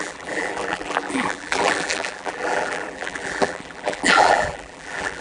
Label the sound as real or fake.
fake